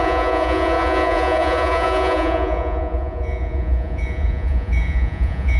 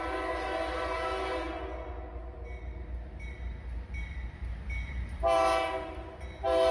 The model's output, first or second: first